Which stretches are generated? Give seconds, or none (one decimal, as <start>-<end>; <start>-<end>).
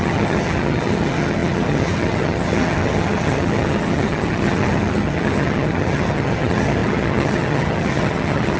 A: 0.0-8.6